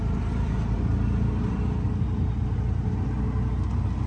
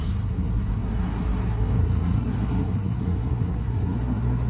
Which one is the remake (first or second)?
second